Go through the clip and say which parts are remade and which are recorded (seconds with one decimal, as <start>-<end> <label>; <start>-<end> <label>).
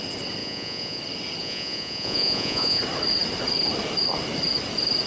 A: 0.0-0.4 recorded; 0.4-1.0 remade; 1.0-1.4 recorded; 1.4-2.8 remade; 2.8-5.1 recorded